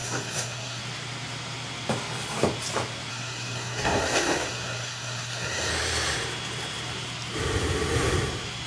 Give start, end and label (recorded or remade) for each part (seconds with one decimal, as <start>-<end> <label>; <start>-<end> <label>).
0.0-0.8 remade; 0.8-3.1 recorded; 3.1-5.7 remade; 5.7-8.7 recorded